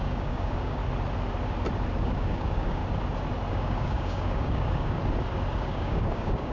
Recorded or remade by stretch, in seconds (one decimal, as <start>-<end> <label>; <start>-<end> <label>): 0.0-0.8 remade; 0.8-2.0 recorded; 2.0-2.8 remade; 2.8-3.5 recorded; 3.5-5.0 remade; 5.0-5.6 recorded; 5.6-6.5 remade